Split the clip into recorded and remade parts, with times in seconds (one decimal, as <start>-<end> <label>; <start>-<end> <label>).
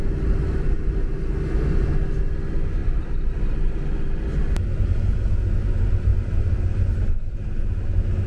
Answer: 0.0-2.8 recorded; 2.8-3.3 remade; 3.3-6.1 recorded; 6.1-6.9 remade; 6.9-8.3 recorded